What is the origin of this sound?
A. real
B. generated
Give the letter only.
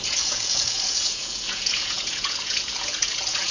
B